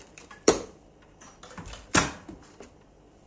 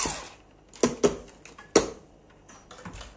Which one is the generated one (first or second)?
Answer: first